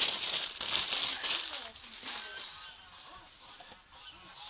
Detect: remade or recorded recorded